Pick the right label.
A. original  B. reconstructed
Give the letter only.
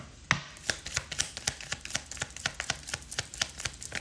A